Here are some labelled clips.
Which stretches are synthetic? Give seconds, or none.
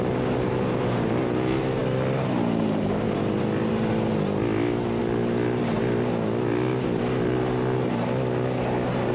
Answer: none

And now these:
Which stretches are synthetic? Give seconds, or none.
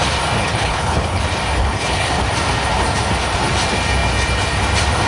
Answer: 0.5-1.2 (codec, HILCodec); 1.6-2.1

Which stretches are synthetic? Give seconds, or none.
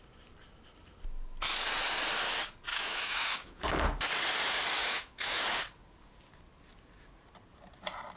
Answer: 2.7-3.6 (autoencoder, DAC-VAE); 4.8-5.4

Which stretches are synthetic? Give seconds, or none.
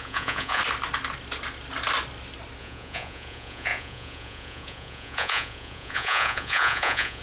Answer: 0.0-0.6 (vocoder, Vocos); 2.6-7.2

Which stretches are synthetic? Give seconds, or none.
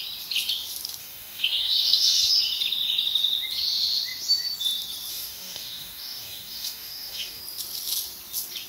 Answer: 1.0-2.3 (codec, DAC); 5.1-7.4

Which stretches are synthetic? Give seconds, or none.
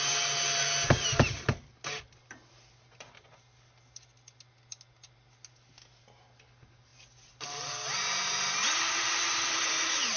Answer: none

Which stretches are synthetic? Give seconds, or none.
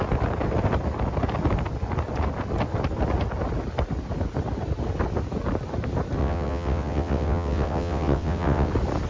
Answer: 6.2-8.7 (vocoder, WaveNeXt)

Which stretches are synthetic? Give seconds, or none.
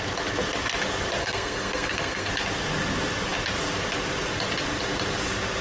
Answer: 1.2-2.3 (codec, SNAC)